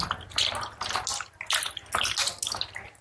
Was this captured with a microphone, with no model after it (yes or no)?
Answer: yes